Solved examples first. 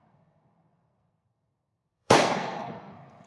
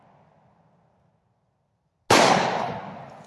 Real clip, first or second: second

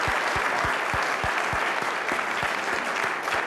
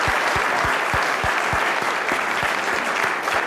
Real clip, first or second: first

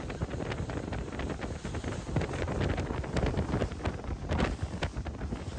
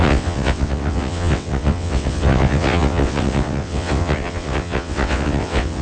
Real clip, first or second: first